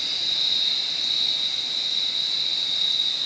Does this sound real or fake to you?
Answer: real